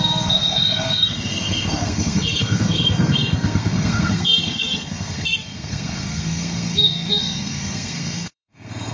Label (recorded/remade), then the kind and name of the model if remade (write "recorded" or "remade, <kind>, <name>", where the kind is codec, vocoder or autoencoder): remade, codec, SNAC